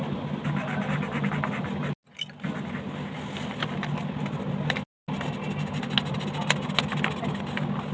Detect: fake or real real